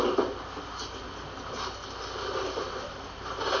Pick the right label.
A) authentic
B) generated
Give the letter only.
A